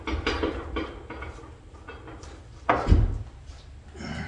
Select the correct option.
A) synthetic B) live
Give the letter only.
B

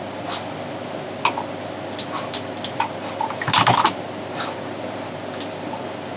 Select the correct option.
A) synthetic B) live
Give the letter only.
B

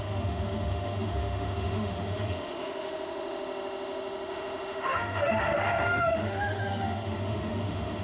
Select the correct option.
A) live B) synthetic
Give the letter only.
B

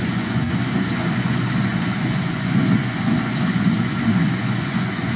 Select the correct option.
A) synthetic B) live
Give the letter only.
A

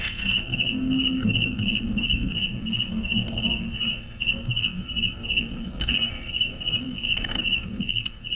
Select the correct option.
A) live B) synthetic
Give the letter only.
B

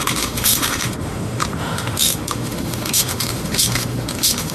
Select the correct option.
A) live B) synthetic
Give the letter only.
B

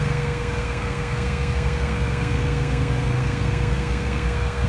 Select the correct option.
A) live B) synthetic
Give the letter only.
B